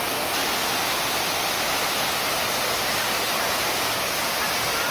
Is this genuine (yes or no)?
yes